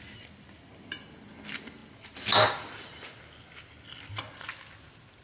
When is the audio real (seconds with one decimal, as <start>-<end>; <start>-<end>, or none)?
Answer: 0.0-5.2